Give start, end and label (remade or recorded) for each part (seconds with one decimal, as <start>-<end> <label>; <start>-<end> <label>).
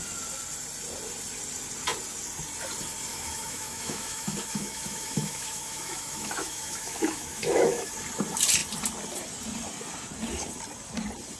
0.0-3.1 recorded; 3.1-7.9 remade; 7.9-11.4 recorded